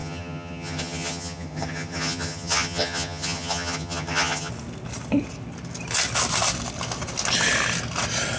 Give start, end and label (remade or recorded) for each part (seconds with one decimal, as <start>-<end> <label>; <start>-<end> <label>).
0.0-4.5 remade; 4.5-8.4 recorded